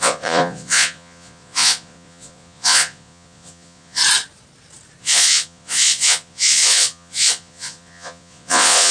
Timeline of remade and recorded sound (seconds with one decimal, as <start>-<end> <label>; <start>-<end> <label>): 0.0-4.0 remade; 4.0-5.0 recorded; 5.0-8.9 remade